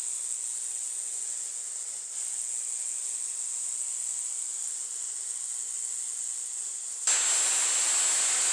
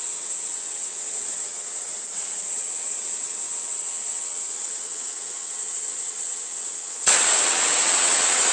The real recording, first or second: first